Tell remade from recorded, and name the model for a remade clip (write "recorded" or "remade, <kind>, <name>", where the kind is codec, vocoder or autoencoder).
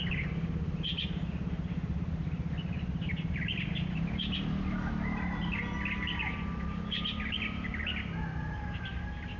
recorded